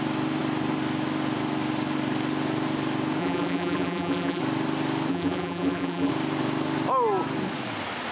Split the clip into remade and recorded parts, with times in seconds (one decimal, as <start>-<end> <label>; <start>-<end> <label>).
0.0-3.2 recorded; 3.2-4.4 remade; 4.4-5.1 recorded; 5.1-6.1 remade; 6.1-8.1 recorded